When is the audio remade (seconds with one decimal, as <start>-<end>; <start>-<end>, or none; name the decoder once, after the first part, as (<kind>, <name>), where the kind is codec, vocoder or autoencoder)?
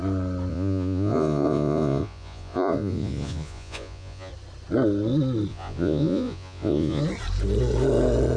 0.5-4.3 (vocoder, Vocos); 5.5-7.0